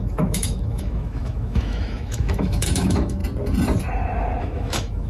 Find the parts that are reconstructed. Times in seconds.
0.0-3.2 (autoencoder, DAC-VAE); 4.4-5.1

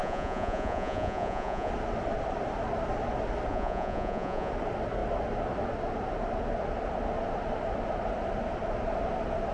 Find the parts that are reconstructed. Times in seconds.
0.0-1.7 (vocoder, Vocos); 3.5-4.5